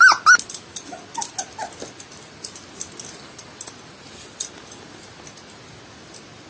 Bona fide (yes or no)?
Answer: yes